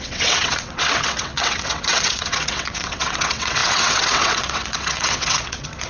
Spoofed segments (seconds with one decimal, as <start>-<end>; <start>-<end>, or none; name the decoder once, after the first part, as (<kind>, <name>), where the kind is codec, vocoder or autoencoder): 0.0-5.9 (vocoder, WaveNeXt)